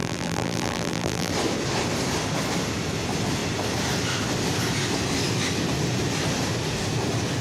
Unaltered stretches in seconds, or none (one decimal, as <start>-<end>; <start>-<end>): 1.3-7.4